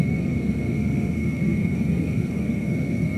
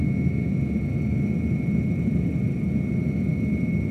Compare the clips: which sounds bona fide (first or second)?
second